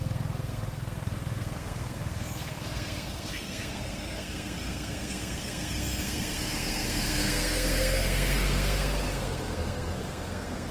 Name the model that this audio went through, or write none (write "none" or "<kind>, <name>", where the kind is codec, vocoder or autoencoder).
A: codec, SNAC